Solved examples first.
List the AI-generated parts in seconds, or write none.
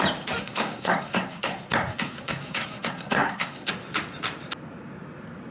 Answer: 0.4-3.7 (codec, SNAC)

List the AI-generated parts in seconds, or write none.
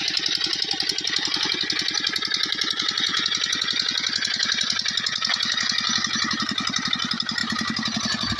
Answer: none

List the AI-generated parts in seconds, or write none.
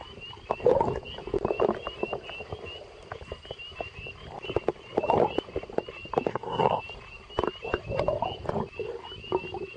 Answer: 6.3-6.8 (codec, SNAC)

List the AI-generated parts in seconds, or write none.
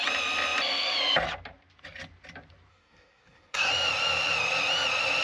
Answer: 2.7-3.7 (codec, SNAC)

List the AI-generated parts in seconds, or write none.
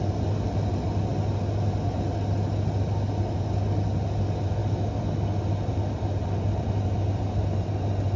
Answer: none